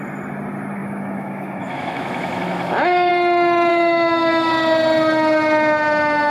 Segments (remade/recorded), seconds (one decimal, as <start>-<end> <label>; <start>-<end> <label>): 0.0-0.8 recorded; 0.8-3.1 remade; 3.1-3.7 recorded; 3.7-4.5 remade; 4.5-6.3 recorded